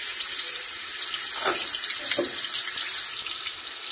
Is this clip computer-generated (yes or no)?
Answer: no